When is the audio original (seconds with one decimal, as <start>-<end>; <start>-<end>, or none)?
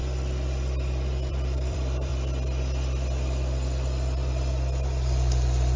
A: 0.0-1.3; 2.1-5.8